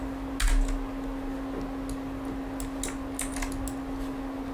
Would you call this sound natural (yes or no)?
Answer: yes